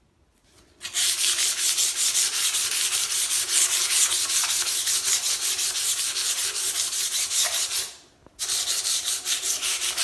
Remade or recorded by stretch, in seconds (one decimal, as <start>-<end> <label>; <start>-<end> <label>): 0.0-8.2 recorded; 8.2-10.0 remade